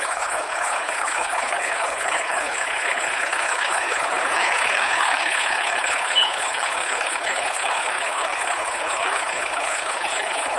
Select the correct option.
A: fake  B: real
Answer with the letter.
A